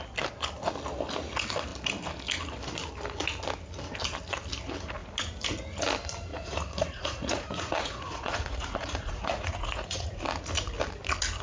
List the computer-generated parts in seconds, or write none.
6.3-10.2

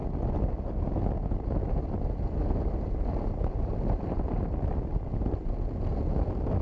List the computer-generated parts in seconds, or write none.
none

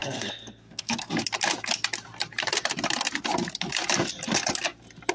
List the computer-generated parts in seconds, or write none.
0.0-1.1

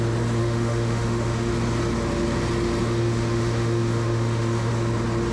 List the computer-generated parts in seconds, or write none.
0.4-1.5; 2.8-4.7

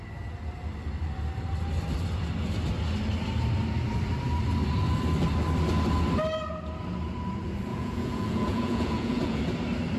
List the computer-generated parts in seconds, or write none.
7.7-9.4

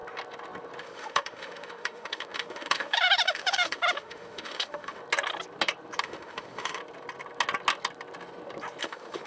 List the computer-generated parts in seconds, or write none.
0.8-5.0; 6.0-6.8; 8.8-9.3